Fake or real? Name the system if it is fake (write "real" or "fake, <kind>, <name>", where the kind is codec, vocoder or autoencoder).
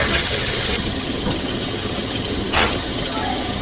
fake, vocoder, HiFi-GAN